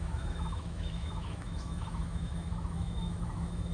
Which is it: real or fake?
fake